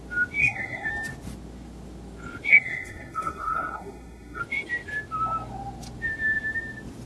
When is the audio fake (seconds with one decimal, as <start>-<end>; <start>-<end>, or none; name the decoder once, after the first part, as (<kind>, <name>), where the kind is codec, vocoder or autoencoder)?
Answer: 0.4-0.9 (codec, SNAC); 2.5-4.4